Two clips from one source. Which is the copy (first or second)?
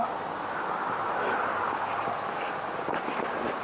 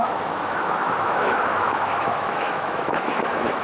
second